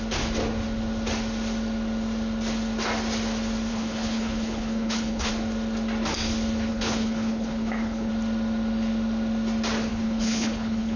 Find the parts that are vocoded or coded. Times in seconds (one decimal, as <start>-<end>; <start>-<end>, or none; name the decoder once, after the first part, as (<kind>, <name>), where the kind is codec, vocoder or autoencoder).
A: 3.7-5.3 (codec, HILCodec); 6.7-8.1; 9.9-11.0